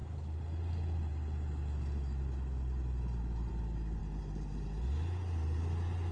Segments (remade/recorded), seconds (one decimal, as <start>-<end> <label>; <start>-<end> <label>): 0.0-6.1 recorded